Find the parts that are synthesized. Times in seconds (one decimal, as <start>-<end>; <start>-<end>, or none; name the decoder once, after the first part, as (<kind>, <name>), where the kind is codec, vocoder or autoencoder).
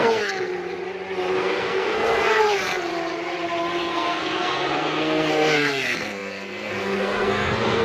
0.0-0.5 (codec, SNAC); 1.4-2.9; 3.8-7.8